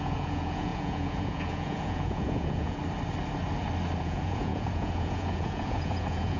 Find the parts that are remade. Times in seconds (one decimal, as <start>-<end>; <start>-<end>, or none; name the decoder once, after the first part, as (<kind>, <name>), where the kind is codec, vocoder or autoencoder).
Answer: 0.0-2.8 (vocoder, Vocos); 4.0-6.4